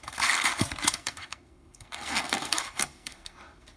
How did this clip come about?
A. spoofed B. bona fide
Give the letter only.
A